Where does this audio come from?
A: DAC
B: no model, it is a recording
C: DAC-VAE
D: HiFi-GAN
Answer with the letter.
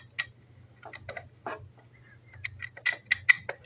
B